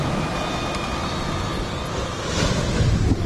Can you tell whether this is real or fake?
real